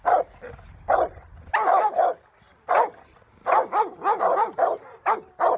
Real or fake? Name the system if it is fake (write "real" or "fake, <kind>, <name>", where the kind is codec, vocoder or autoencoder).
real